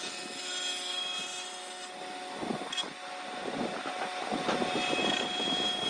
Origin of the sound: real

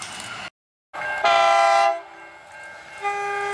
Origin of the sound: real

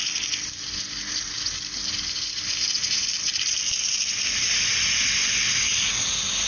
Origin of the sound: real